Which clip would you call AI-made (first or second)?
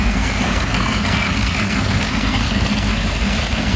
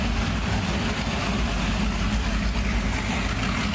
first